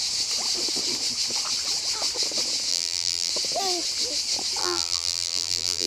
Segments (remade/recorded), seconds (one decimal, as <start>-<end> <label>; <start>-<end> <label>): 0.0-2.7 recorded; 2.7-3.3 remade; 3.3-4.6 recorded; 4.6-5.9 remade